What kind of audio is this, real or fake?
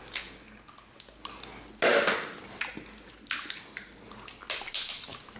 real